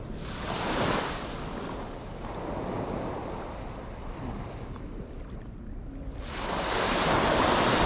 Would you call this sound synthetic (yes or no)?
no